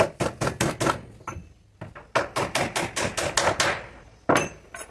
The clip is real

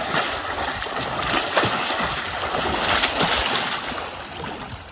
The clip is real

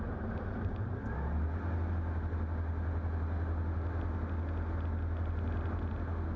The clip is real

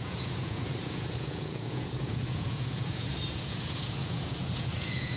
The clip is fake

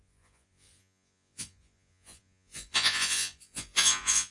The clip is fake